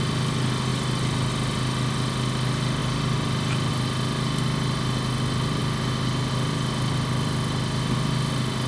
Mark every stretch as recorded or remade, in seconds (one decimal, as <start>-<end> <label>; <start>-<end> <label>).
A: 0.0-8.7 recorded